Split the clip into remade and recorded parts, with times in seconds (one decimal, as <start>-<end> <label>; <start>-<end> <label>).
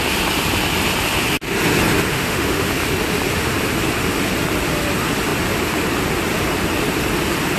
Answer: 0.0-2.1 recorded; 2.1-2.7 remade; 2.7-7.6 recorded